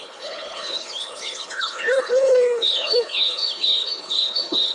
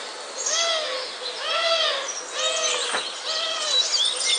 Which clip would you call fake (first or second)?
first